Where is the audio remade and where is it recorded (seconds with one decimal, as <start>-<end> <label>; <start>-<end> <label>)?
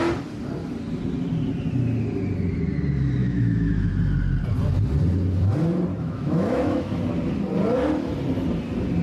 0.0-3.2 recorded; 3.2-3.9 remade; 3.9-5.9 recorded; 5.9-7.0 remade; 7.0-9.0 recorded